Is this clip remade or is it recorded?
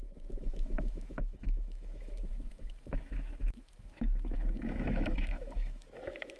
remade